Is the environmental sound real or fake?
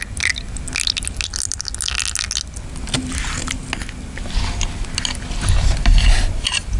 real